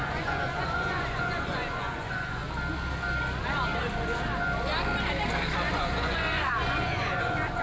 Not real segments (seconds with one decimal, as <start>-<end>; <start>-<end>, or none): 0.0-2.4; 5.7-7.6